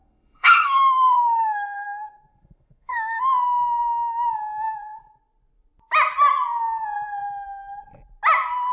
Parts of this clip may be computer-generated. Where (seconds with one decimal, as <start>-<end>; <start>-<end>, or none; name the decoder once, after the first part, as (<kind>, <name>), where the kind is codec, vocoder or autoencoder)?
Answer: 0.0-3.2 (codec, SNAC)